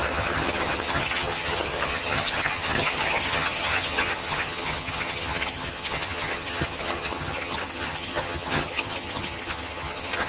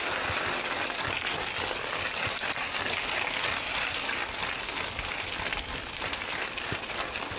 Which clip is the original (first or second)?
second